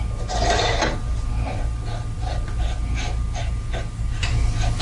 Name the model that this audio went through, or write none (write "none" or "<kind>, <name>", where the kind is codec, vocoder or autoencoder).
none